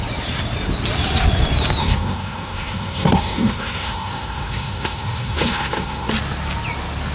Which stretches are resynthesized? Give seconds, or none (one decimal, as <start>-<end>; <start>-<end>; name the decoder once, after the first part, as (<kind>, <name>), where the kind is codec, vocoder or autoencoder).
1.8-6.1 (codec, SNAC)